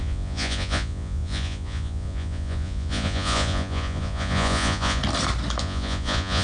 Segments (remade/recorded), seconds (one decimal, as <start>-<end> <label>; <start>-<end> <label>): 0.0-5.0 remade; 5.0-5.6 recorded; 5.6-6.4 remade

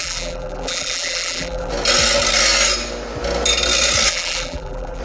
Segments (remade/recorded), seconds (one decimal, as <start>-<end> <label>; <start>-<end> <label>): 0.0-1.7 remade; 1.7-4.1 recorded; 4.1-5.0 remade